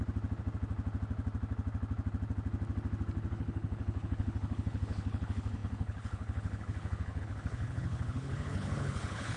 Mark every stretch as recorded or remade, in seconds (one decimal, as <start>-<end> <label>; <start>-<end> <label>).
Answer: 0.0-3.3 recorded; 3.3-9.4 remade